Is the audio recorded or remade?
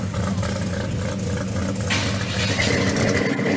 recorded